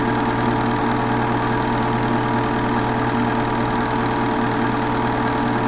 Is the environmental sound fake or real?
real